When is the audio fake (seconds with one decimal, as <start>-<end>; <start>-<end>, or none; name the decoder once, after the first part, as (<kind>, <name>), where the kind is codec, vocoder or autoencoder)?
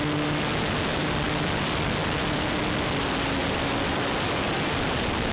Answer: 3.4-5.3 (vocoder, BigVGAN v2)